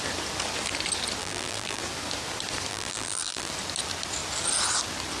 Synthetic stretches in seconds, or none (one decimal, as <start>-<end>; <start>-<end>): 1.2-1.8; 2.7-3.5